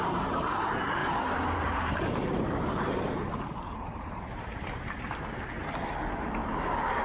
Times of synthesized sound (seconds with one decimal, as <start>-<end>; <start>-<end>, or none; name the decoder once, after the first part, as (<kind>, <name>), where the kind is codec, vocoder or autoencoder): 1.0-5.2 (vocoder, BigVGAN v2)